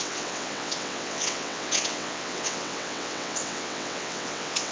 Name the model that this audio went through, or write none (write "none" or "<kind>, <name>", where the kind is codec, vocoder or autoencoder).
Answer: vocoder, WaveNeXt